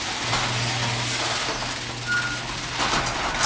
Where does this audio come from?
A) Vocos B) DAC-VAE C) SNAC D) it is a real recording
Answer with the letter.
D